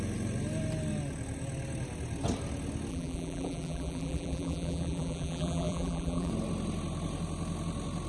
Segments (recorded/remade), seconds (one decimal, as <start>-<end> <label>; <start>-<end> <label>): 0.0-2.9 recorded; 2.9-6.3 remade; 6.3-8.1 recorded